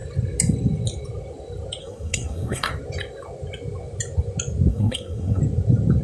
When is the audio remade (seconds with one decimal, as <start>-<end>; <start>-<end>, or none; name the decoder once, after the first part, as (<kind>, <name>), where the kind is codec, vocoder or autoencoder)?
1.8-2.7 (codec, SNAC); 4.7-5.4